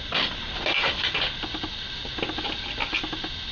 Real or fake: real